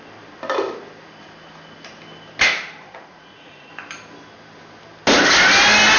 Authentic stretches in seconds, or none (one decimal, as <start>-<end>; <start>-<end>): 0.0-2.5; 3.7-6.0